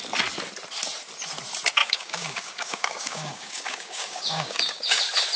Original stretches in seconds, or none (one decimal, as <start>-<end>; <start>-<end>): 0.0-1.8; 5.0-5.4